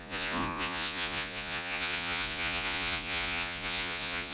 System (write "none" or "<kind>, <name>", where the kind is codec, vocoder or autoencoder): vocoder, Vocos